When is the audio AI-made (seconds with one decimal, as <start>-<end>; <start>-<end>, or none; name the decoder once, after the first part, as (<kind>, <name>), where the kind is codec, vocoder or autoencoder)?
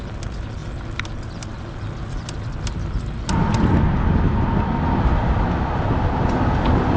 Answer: none